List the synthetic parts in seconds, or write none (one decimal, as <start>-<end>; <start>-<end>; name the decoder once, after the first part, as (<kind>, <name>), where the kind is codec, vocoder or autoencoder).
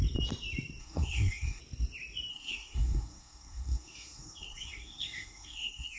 0.8-1.6 (codec, SNAC); 2.3-6.0